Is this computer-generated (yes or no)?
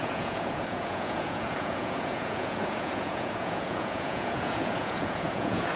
yes